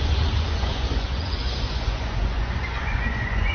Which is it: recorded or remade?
remade